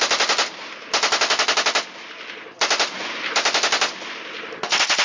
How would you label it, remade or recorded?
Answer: recorded